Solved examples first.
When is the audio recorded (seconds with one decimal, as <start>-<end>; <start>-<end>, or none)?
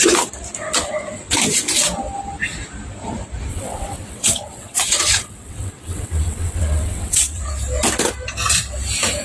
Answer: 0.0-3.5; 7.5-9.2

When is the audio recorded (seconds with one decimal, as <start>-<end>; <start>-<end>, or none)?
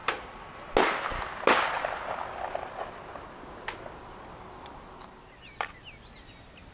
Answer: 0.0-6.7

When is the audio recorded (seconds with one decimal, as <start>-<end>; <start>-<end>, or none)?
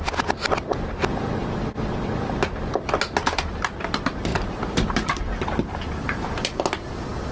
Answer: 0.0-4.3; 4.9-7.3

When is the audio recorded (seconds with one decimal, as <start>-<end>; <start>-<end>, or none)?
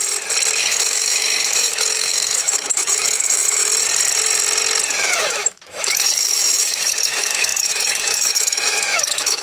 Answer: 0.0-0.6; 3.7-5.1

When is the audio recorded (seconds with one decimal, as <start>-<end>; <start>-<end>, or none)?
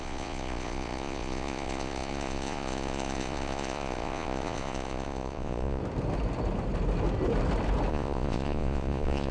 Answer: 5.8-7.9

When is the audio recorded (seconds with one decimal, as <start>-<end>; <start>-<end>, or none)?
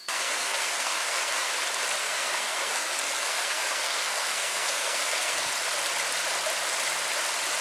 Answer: 1.5-2.0; 5.5-7.6